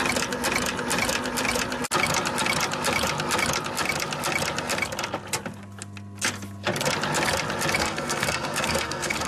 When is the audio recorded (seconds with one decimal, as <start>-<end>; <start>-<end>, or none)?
0.0-7.8